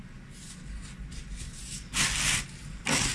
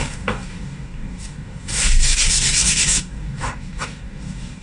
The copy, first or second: second